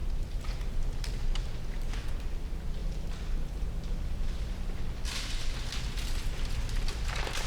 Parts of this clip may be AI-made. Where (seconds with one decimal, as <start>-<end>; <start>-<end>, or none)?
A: none